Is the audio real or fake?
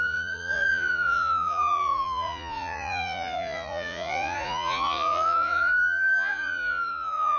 fake